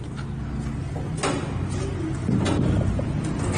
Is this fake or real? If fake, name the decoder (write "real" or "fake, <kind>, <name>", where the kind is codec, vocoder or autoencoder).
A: real